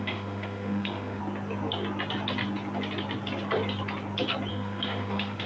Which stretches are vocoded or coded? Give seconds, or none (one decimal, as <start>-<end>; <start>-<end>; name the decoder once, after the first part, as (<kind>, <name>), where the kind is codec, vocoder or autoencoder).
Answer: 0.0-1.2 (autoencoder, DAC-VAE); 4.5-5.5